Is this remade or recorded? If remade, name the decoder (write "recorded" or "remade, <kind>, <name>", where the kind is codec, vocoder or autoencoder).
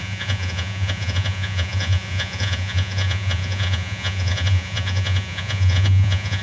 remade, vocoder, Vocos